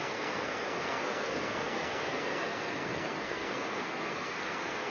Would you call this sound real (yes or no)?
no